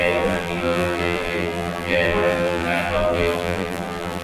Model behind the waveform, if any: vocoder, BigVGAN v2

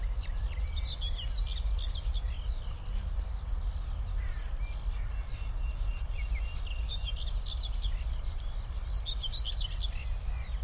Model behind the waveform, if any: none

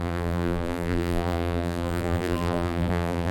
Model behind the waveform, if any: vocoder, BigVGAN v2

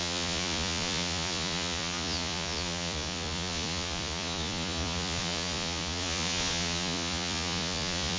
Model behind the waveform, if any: vocoder, Vocos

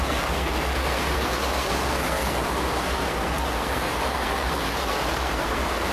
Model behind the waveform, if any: codec, SNAC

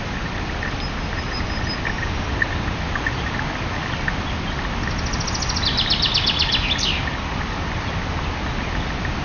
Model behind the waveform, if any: none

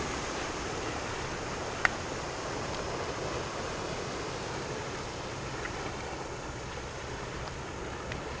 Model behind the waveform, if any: none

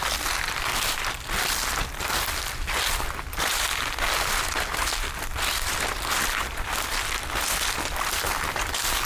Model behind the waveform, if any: none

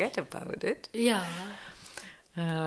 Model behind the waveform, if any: autoencoder, DAC-VAE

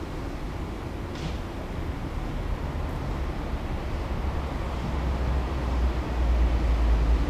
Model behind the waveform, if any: none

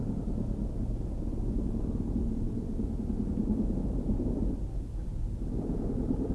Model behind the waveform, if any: none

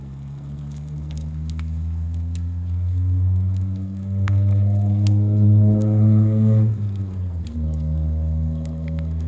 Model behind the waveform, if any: codec, SNAC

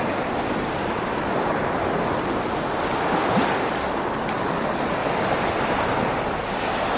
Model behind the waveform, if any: none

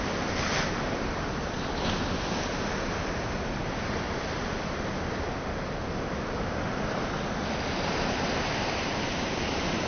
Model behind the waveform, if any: none